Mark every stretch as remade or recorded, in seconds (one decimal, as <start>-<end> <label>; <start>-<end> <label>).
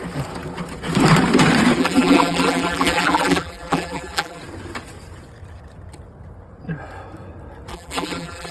0.0-1.8 recorded; 1.8-4.4 remade; 4.4-7.7 recorded; 7.7-8.5 remade